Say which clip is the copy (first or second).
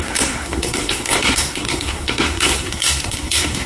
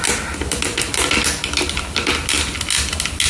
first